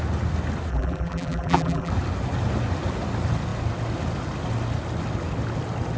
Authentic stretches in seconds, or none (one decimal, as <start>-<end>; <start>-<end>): 0.0-0.7; 1.9-6.0